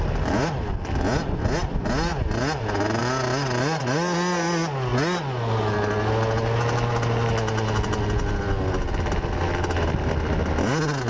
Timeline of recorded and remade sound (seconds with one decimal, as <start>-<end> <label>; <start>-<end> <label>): 0.0-11.1 recorded